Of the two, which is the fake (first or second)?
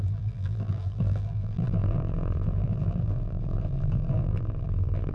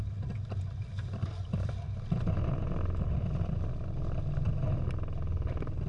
first